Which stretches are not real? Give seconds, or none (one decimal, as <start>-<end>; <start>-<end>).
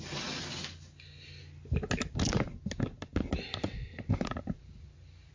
none